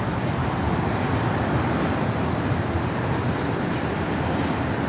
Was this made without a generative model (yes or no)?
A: yes